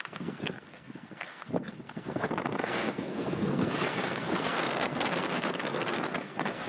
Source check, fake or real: fake